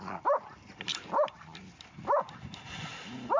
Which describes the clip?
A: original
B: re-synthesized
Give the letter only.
A